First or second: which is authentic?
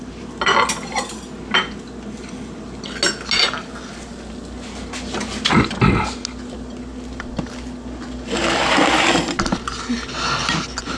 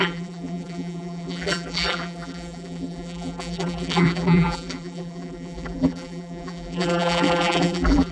first